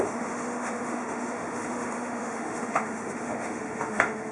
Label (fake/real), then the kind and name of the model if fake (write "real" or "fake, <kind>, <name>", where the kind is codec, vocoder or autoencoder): fake, autoencoder, DAC-VAE